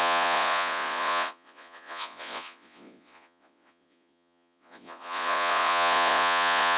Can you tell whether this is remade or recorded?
remade